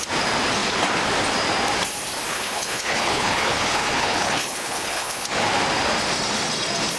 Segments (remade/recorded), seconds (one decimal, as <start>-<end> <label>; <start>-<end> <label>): 0.0-2.3 recorded; 2.3-5.2 remade; 5.2-7.0 recorded